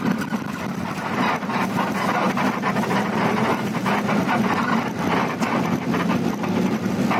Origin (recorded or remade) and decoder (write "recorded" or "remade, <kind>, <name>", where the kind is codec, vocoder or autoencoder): recorded